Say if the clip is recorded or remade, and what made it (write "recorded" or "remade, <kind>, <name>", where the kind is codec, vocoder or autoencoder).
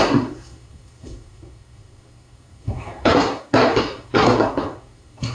remade, codec, SNAC